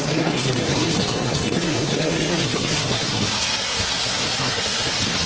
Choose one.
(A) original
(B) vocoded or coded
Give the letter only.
B